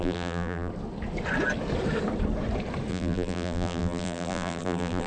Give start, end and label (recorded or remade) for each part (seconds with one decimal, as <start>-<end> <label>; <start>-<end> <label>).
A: 0.0-0.7 remade; 0.7-2.9 recorded; 2.9-5.1 remade